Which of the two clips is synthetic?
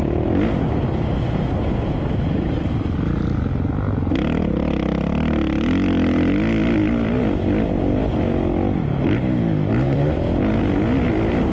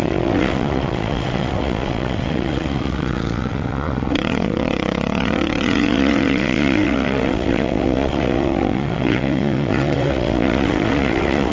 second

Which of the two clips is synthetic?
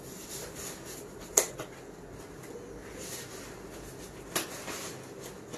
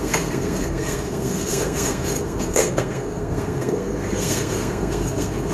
second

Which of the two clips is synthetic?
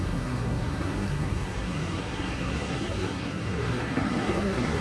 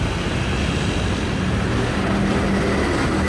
first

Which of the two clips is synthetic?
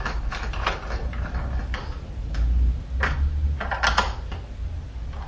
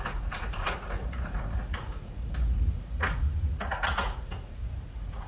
second